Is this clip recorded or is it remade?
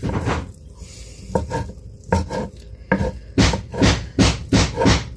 recorded